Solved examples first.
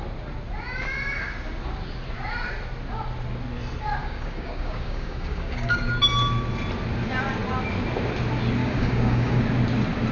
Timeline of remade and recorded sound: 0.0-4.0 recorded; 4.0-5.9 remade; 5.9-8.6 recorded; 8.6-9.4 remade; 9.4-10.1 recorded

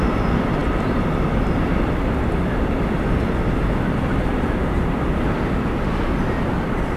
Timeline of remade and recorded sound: 0.0-7.0 recorded